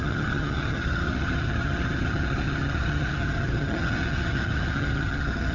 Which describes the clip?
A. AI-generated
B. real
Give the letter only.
A